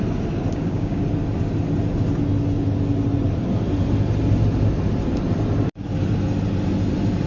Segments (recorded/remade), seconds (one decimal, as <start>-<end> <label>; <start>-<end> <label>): 0.0-0.5 recorded; 0.5-1.0 remade; 1.0-7.3 recorded